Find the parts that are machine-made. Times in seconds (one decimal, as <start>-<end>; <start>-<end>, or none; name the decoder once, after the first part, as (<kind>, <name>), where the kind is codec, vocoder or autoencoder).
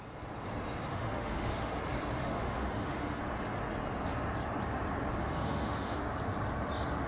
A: 0.9-1.7 (autoencoder, DAC-VAE); 2.2-3.2; 5.2-6.0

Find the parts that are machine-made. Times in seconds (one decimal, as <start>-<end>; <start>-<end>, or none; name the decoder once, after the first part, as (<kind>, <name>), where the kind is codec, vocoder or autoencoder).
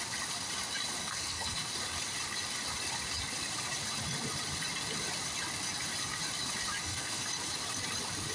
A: 1.0-1.7 (codec, SNAC); 6.8-7.3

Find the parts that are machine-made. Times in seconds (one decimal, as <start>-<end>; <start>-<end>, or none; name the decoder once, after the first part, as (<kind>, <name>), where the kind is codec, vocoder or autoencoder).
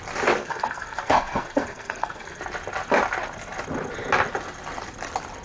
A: 0.4-2.4 (codec, SNAC)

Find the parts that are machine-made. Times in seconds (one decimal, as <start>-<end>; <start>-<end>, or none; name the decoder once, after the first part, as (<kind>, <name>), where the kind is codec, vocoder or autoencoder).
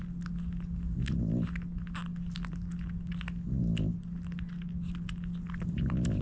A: none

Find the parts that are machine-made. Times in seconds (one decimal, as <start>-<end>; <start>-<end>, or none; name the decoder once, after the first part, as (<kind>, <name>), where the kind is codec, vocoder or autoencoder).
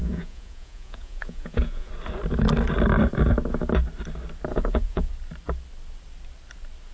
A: 0.0-1.9 (vocoder, Vocos); 4.5-5.1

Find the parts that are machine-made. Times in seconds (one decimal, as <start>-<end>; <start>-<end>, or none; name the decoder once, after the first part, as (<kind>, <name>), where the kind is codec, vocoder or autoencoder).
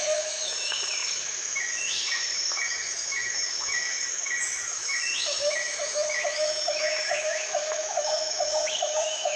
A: 0.0-9.4 (autoencoder, DAC-VAE)